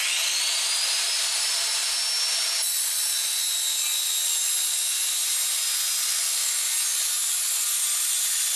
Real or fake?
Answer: real